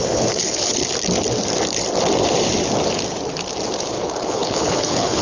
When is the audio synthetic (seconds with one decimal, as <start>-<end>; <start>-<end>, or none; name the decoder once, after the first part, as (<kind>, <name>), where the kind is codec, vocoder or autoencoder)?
0.0-0.8 (codec, HILCodec); 3.9-5.2